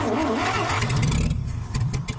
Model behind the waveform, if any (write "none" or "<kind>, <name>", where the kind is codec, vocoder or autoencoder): none